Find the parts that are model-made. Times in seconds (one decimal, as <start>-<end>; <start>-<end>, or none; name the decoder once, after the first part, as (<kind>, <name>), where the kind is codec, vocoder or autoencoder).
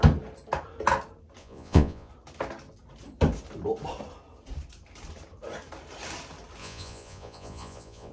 1.4-2.1 (vocoder, Vocos); 6.6-8.1